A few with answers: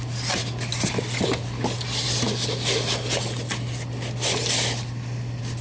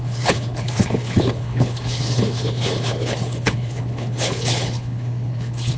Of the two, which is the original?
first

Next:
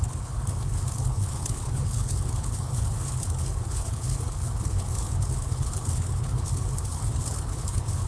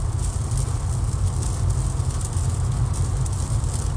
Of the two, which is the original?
second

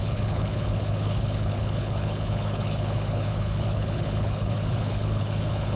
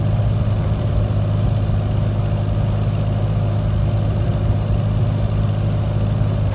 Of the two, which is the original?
second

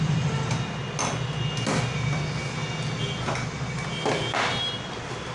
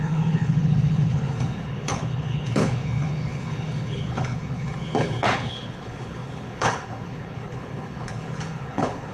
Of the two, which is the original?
first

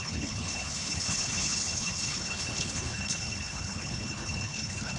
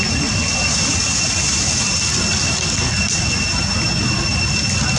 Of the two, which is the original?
second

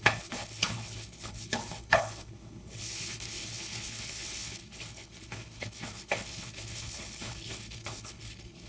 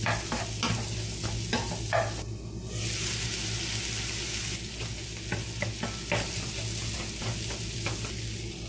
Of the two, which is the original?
second